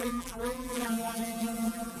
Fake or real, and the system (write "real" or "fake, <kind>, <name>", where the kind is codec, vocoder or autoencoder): fake, vocoder, BigVGAN v2